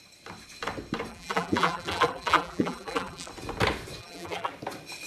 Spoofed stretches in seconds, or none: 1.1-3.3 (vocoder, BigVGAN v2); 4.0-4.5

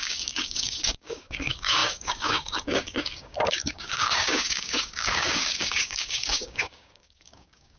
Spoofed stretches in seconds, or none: 0.0-7.8 (codec, DAC)